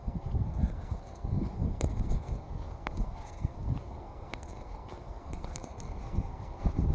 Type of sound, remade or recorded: remade